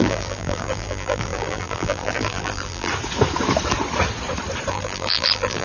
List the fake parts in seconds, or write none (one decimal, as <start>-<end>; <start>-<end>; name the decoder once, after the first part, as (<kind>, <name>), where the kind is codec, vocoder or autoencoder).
0.0-2.9 (vocoder, BigVGAN v2); 4.7-5.6